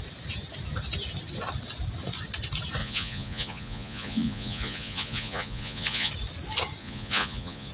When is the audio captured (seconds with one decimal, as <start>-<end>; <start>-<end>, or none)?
0.0-2.8; 6.1-6.8